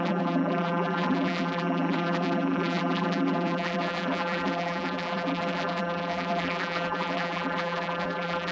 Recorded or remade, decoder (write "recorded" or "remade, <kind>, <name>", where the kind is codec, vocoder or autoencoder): remade, vocoder, BigVGAN v2